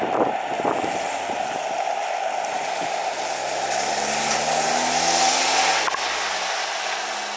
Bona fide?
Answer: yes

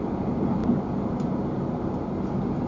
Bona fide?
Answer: yes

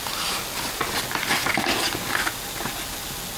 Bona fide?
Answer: yes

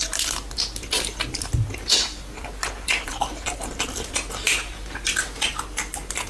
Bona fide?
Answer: yes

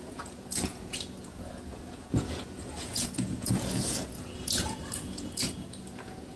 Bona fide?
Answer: no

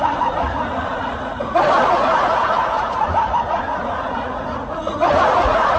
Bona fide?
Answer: no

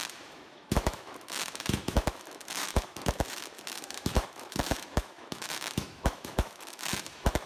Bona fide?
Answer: no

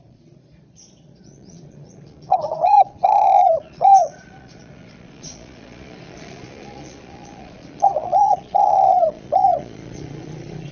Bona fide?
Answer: no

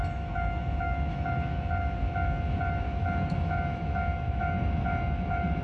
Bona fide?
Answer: no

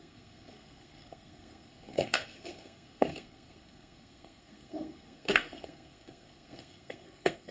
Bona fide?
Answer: no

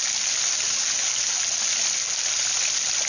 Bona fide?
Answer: yes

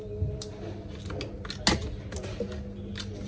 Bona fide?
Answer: yes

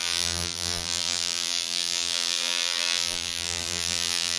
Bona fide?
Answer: no